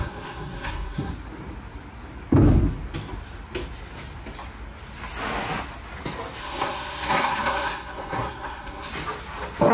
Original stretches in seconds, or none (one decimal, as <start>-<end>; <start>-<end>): 1.1-6.4; 8.9-9.7